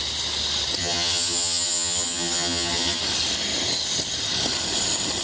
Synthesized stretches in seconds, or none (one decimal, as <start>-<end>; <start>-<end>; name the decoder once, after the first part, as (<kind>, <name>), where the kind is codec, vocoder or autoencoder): 0.8-3.0 (vocoder, HiFi-GAN)